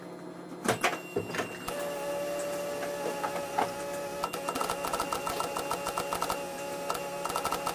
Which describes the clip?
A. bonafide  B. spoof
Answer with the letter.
A